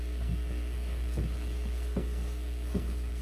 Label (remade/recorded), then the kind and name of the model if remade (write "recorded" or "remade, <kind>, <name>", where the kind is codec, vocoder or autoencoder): remade, codec, SNAC